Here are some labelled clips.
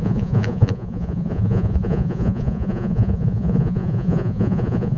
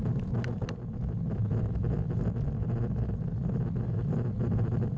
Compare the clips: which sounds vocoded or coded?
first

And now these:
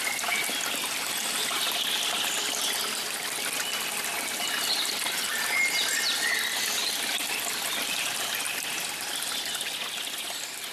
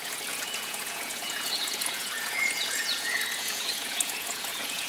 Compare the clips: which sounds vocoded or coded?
second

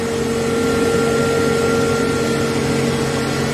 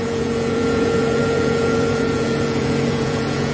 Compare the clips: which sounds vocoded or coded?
second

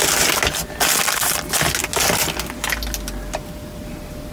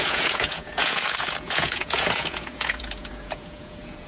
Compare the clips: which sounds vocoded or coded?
second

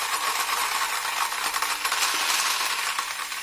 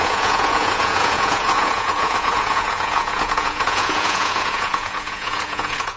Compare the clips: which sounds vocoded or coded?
second